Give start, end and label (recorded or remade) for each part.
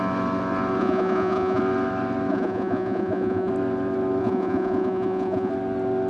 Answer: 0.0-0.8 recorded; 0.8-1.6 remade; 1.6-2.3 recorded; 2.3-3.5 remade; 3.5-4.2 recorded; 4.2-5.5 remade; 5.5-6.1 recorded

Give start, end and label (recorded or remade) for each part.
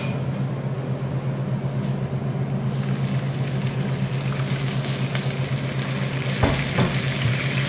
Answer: 0.0-7.7 recorded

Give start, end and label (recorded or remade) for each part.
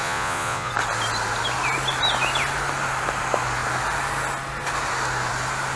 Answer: 0.0-0.7 remade; 0.7-5.8 recorded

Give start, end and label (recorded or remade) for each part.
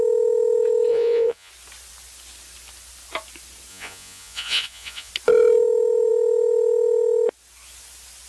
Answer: 0.0-0.9 recorded; 0.9-1.5 remade; 1.5-3.7 recorded; 3.7-5.1 remade; 5.1-8.3 recorded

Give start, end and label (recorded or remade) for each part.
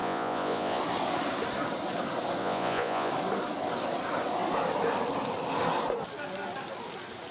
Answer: 0.0-0.8 remade; 0.8-2.4 recorded; 2.4-3.1 remade; 3.1-7.3 recorded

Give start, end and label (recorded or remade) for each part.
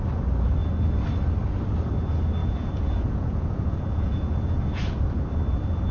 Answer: 0.0-2.4 recorded; 2.4-4.8 remade; 4.8-5.9 recorded